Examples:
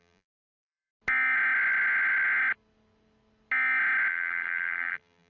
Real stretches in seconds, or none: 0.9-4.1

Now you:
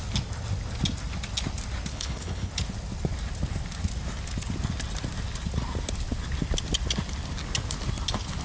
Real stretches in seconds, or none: 0.0-1.9; 2.5-8.4

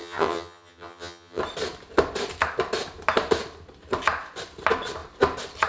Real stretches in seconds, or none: 1.4-5.7

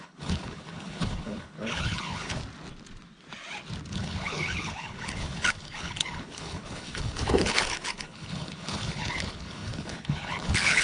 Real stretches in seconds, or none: 2.4-3.9

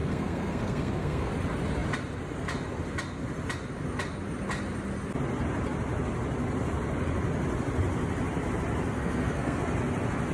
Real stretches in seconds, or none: 1.3-8.9; 9.6-10.3